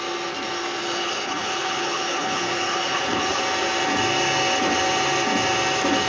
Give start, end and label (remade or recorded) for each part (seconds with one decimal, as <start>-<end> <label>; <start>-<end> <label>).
0.0-0.8 recorded; 0.8-3.4 remade; 3.4-6.1 recorded